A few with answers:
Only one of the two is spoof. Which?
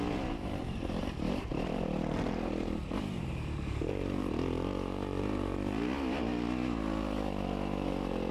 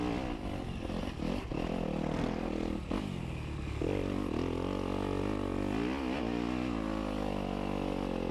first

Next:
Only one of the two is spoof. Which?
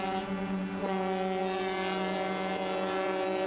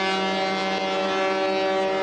first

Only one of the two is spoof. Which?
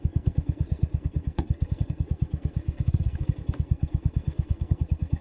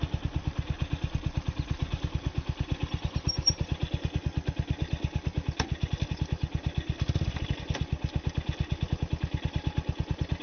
first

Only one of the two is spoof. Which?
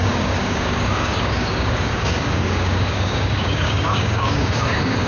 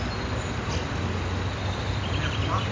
first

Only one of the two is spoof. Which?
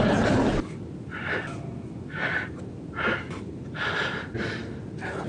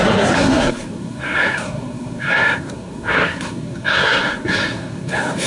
second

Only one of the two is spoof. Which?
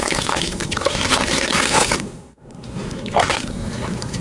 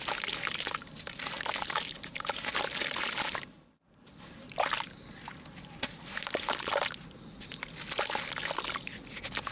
first